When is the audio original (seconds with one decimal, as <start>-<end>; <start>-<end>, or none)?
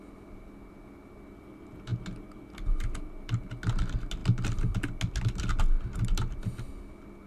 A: 0.0-7.3